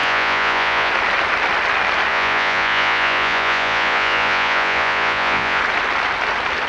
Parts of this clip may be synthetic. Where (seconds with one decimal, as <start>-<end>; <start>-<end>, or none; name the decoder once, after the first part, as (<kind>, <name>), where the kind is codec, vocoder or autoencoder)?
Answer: 0.0-0.9 (vocoder, Vocos); 2.1-5.6

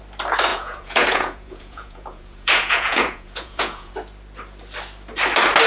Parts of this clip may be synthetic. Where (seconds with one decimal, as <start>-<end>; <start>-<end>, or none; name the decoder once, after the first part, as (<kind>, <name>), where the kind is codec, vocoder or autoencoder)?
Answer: 0.5-3.9 (vocoder, Vocos)